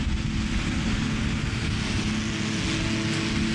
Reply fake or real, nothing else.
real